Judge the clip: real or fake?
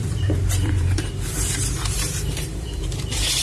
fake